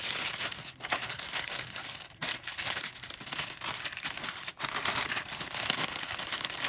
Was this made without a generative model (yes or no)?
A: yes